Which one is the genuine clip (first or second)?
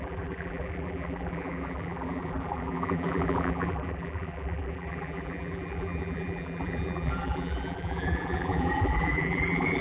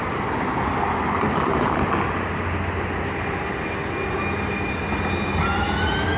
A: second